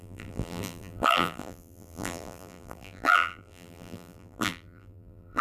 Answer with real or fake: fake